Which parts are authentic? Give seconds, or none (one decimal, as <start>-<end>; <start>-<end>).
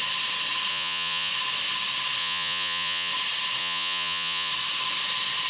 0.0-0.7; 1.3-2.2; 3.1-3.6; 4.5-5.5